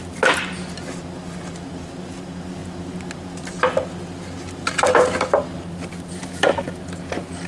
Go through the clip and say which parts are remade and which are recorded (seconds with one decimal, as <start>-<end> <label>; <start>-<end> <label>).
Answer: 0.0-7.5 recorded